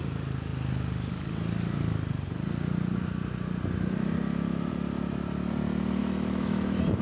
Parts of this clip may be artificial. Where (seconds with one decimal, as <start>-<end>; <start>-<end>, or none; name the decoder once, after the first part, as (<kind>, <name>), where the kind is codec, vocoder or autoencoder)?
6.0-7.0 (autoencoder, DAC-VAE)